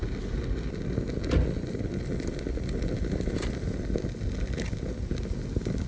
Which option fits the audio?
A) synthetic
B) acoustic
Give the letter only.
B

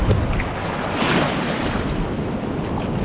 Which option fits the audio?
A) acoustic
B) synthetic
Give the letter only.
A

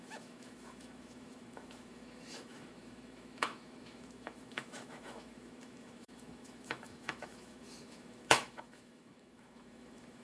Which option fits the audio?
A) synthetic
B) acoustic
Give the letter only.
A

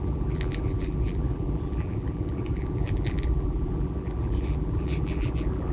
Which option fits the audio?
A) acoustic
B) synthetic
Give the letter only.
B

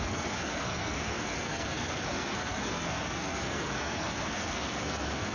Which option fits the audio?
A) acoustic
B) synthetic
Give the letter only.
B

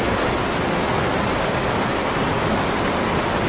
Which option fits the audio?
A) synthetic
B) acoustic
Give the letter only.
B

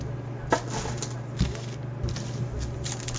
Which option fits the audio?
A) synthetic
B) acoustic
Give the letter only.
B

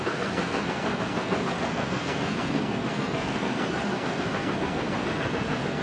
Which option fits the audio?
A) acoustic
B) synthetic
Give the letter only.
B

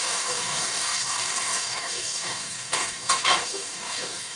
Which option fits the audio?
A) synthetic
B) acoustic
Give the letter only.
A